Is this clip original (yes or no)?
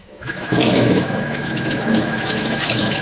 no